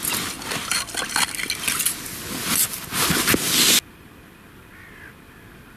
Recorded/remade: recorded